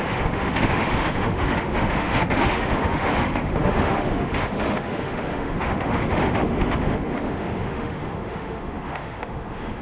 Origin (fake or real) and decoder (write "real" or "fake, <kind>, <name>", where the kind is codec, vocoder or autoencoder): fake, autoencoder, DAC-VAE